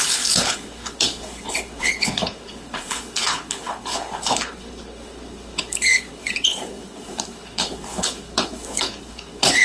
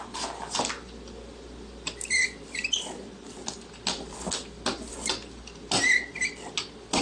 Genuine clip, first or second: second